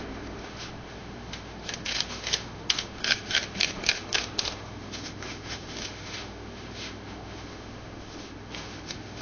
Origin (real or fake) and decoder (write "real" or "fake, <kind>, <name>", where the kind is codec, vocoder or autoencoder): fake, autoencoder, DAC-VAE